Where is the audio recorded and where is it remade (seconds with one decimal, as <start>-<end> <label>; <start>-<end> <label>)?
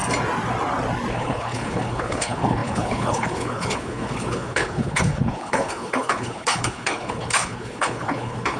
0.0-1.1 recorded; 1.1-8.6 remade